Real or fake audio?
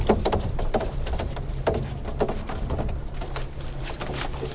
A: real